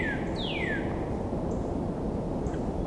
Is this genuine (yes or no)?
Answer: yes